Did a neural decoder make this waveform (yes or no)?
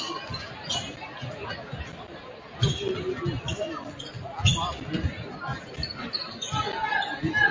no